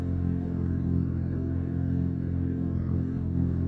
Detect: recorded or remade remade